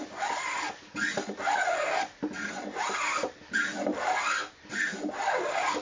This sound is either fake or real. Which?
real